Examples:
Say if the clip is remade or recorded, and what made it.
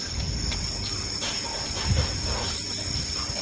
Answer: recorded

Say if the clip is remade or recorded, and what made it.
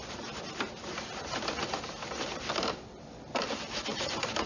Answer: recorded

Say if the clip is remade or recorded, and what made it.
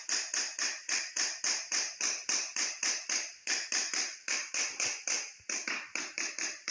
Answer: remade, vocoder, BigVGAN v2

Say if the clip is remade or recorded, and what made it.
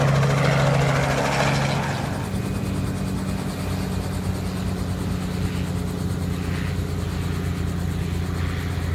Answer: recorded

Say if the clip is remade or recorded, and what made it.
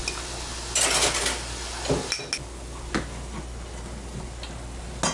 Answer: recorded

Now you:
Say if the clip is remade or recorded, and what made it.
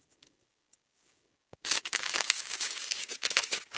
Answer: remade, codec, DAC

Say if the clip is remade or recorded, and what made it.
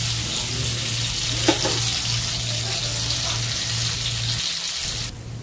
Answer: recorded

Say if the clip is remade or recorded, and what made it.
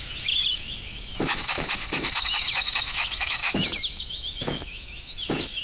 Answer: remade, autoencoder, DAC-VAE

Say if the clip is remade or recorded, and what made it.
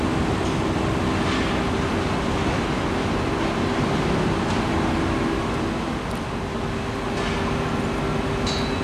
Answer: recorded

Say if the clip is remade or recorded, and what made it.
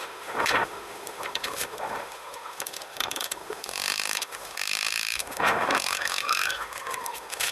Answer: remade, autoencoder, DAC-VAE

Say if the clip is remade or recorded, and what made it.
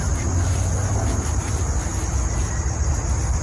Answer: recorded